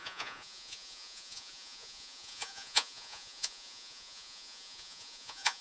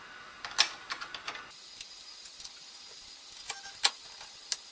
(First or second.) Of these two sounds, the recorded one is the second